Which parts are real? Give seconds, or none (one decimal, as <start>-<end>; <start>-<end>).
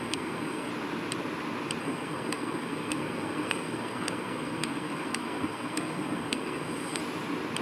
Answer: 0.7-1.8; 7.0-7.6